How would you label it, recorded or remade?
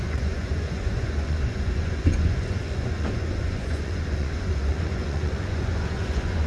remade